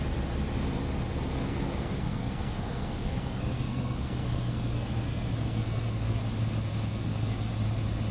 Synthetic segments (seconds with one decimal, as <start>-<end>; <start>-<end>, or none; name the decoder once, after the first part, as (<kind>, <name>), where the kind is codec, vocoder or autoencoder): 1.3-6.2 (codec, SNAC); 6.7-7.5